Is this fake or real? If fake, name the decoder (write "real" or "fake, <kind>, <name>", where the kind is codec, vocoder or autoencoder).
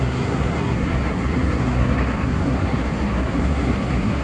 fake, codec, SNAC